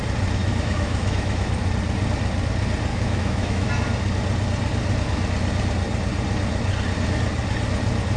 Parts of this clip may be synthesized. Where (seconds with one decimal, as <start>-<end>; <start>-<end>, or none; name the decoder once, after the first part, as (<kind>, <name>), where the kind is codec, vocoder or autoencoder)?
0.4-1.5 (autoencoder, DAC-VAE); 2.9-3.7